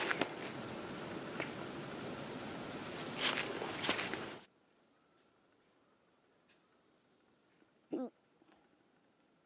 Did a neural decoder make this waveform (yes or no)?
no